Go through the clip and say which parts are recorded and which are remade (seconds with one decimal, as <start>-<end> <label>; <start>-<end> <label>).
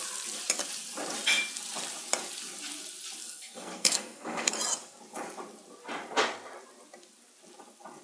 0.0-3.2 recorded; 3.2-4.5 remade; 4.5-8.0 recorded